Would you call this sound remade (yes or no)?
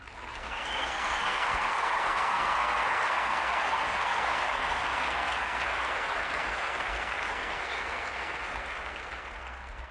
yes